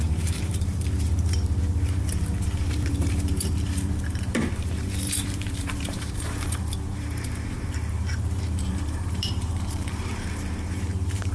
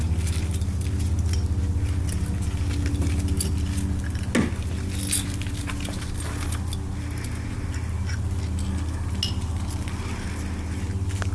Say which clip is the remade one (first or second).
first